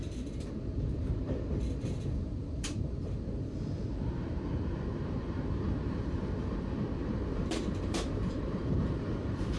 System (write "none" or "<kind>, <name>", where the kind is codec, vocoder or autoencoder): vocoder, BigVGAN v2